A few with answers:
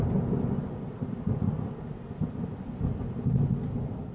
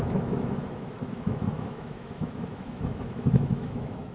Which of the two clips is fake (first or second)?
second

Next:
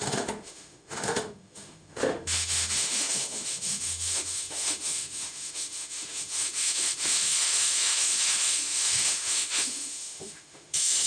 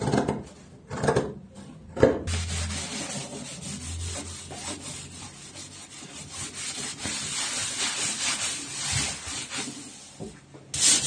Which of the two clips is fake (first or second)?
first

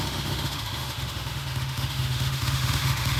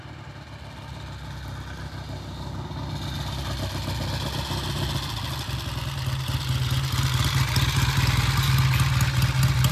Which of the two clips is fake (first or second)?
first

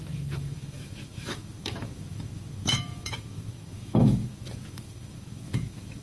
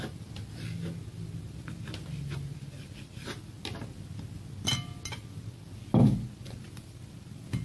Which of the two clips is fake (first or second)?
first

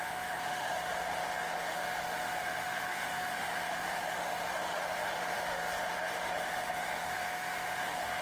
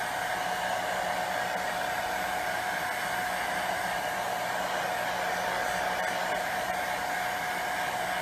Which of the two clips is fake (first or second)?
first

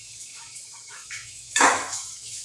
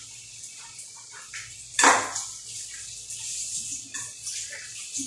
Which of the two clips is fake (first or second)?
first